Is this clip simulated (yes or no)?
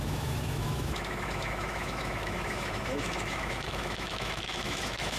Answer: yes